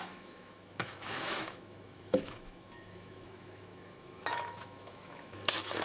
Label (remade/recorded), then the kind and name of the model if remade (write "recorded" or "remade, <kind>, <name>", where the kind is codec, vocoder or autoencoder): remade, autoencoder, DAC-VAE